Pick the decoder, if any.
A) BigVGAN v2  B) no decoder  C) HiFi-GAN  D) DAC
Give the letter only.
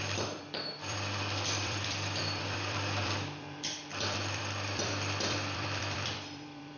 A